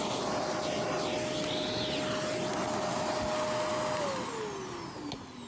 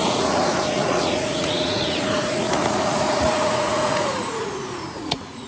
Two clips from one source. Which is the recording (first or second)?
first